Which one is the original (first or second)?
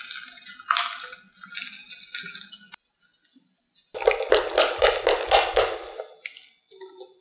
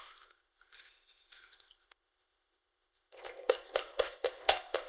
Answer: first